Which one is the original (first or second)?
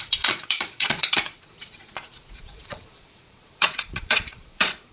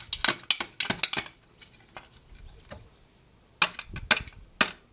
second